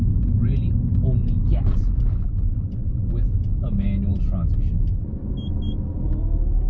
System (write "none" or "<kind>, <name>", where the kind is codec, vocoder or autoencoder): none